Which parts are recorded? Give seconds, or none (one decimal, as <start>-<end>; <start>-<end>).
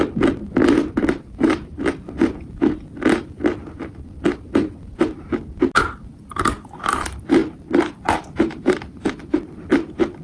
0.0-10.2